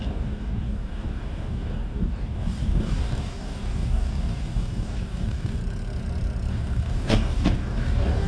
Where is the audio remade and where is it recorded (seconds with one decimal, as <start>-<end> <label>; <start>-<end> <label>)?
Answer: 0.0-5.6 remade; 5.6-6.5 recorded; 6.5-8.3 remade